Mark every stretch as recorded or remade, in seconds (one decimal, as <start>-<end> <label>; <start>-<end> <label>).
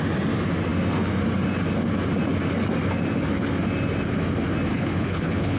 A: 0.0-4.7 recorded; 4.7-5.6 remade